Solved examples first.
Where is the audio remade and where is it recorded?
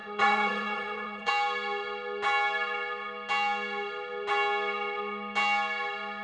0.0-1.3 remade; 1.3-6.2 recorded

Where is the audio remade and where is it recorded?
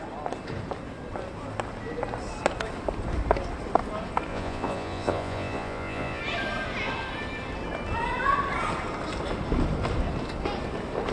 0.0-4.3 recorded; 4.3-6.2 remade; 6.2-11.1 recorded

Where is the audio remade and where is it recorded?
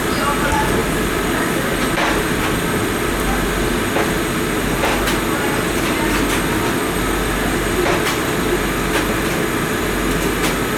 0.0-10.8 recorded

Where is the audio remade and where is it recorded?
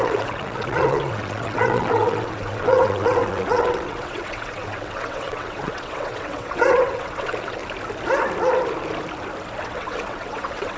0.0-7.6 remade; 7.6-9.6 recorded; 9.6-10.8 remade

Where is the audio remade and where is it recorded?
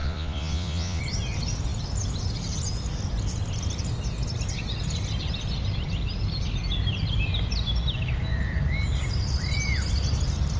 0.0-1.0 remade; 1.0-10.6 recorded